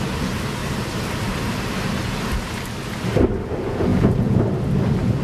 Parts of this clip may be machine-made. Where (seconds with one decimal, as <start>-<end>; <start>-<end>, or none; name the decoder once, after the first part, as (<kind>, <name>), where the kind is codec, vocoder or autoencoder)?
3.9-4.4 (vocoder, Vocos)